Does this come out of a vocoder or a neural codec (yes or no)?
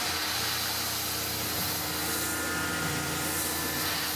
no